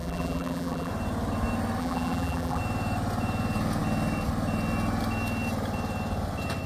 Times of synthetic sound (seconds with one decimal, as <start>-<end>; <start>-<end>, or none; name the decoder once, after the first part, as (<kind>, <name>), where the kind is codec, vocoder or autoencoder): 0.0-0.9 (vocoder, BigVGAN v2); 1.8-2.6